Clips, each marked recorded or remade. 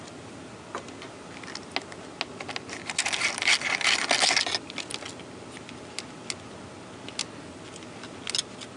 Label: recorded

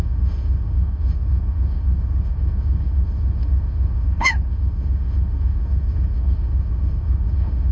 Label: remade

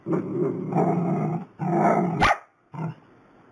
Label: recorded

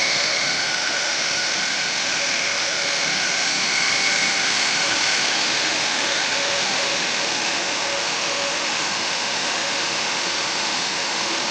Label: remade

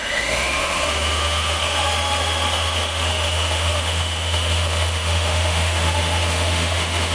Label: remade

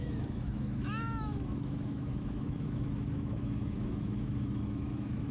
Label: remade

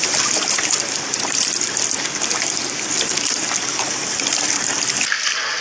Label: recorded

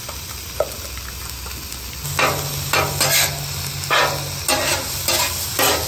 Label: recorded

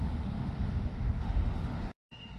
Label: remade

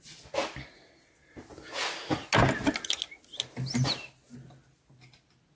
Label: recorded